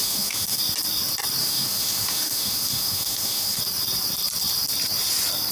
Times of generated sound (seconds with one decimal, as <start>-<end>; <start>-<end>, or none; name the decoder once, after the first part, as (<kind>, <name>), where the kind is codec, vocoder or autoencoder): 0.0-0.6 (autoencoder, DAC-VAE); 1.4-3.6